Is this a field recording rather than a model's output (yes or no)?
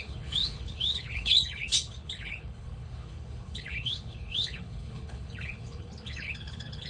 no